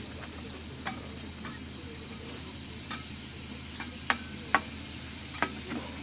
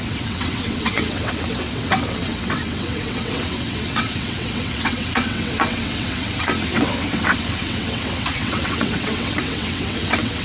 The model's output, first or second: second